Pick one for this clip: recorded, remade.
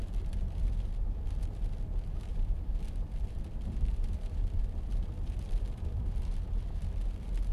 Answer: remade